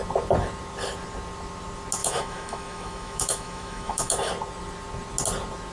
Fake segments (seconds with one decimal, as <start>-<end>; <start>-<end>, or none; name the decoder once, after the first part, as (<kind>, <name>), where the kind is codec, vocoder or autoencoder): 2.0-4.3 (autoencoder, DAC-VAE)